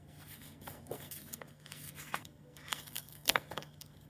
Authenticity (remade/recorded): remade